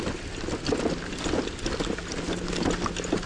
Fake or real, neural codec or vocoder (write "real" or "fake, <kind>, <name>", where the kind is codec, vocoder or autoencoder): real